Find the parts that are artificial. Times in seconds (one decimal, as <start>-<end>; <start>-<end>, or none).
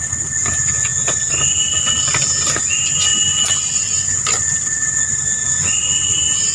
3.1-5.2